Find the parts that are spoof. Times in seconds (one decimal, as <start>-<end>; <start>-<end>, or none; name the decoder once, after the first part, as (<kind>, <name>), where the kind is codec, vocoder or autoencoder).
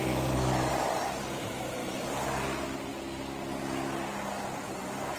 0.0-0.7 (autoencoder, DAC-VAE); 1.3-1.8